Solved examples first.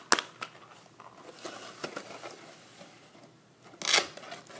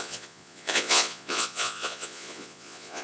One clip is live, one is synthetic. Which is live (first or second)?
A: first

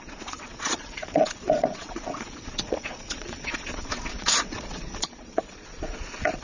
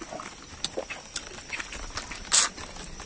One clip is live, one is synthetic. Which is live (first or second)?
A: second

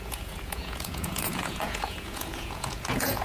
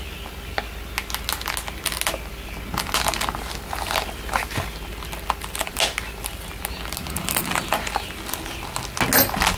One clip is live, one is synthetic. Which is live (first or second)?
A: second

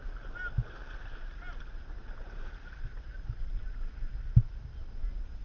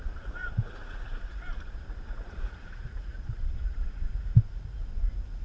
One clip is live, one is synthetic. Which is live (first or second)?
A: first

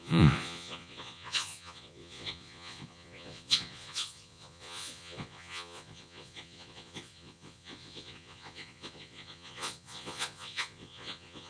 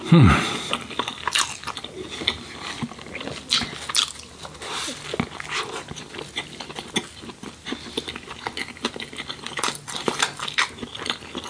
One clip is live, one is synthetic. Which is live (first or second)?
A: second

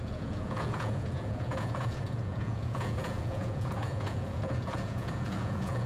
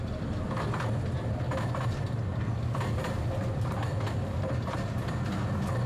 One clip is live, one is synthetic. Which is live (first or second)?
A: second